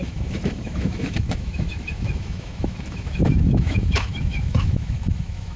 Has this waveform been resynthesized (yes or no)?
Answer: yes